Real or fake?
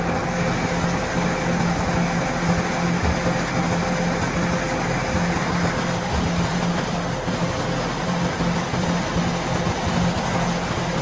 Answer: real